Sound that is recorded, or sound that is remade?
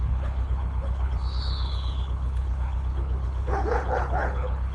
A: remade